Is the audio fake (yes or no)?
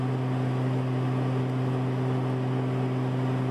no